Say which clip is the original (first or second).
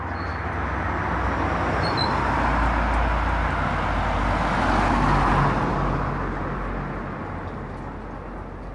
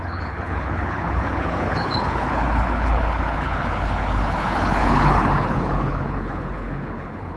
first